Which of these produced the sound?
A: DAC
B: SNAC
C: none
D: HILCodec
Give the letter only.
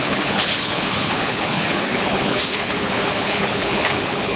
D